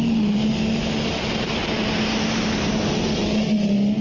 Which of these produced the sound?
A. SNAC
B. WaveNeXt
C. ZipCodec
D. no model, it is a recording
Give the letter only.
D